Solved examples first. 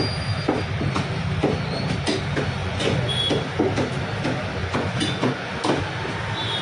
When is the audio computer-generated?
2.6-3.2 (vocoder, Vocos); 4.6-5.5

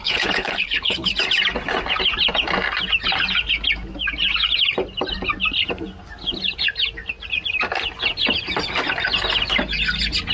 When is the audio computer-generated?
0.0-1.1 (codec, HILCodec)